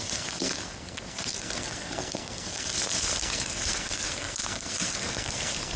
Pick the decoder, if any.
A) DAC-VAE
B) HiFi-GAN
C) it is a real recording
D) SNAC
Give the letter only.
D